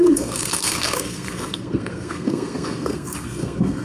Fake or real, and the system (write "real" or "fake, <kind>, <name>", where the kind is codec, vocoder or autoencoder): fake, codec, SNAC